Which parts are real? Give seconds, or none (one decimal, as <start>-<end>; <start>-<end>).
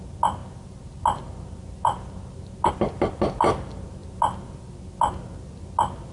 0.0-6.1